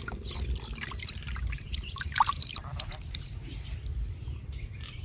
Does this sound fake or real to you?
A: fake